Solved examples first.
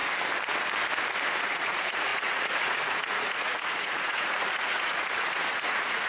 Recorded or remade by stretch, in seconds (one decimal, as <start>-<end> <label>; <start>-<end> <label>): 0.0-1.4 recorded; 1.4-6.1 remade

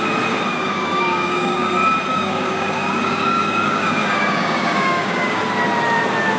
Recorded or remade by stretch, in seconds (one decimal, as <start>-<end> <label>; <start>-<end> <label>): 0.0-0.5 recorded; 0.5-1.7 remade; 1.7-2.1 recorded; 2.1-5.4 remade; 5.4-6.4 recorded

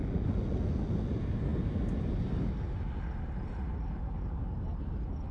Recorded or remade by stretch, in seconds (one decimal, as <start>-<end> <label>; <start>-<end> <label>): 0.0-5.3 recorded

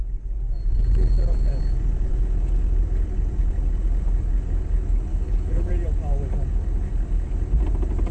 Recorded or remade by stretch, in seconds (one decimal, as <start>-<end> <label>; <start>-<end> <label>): 0.0-5.1 recorded; 5.1-5.7 remade; 5.7-8.1 recorded

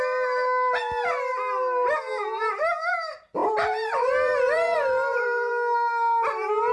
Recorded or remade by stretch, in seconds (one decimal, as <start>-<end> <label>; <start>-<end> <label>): 0.0-3.4 recorded; 3.4-5.5 remade; 5.5-6.7 recorded